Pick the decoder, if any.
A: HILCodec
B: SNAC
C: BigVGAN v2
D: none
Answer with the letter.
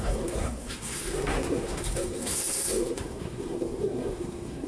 B